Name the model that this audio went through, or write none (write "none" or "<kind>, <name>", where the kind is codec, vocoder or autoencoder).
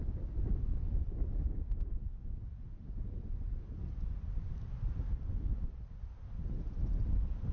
none